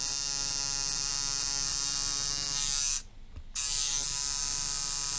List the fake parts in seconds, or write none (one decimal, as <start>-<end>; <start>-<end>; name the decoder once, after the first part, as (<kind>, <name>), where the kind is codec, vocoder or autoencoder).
none